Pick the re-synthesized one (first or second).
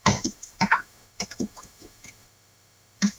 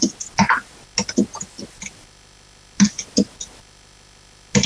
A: first